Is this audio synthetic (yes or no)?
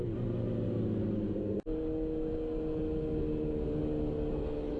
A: no